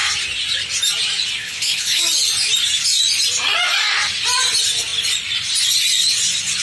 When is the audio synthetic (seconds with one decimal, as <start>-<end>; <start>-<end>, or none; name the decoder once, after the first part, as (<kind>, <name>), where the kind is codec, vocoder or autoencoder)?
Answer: 1.4-2.0 (codec, HILCodec)